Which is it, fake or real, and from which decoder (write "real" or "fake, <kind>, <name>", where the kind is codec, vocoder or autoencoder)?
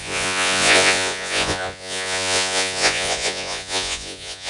fake, vocoder, Vocos